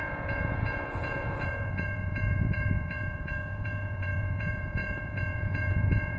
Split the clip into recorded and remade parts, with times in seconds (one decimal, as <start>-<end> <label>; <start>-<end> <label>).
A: 0.0-6.2 remade